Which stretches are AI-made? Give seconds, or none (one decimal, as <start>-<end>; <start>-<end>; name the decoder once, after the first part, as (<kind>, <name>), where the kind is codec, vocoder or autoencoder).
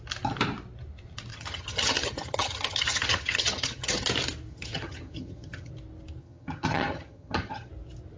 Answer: 1.3-4.1 (vocoder, HiFi-GAN); 4.5-5.7; 6.2-7.7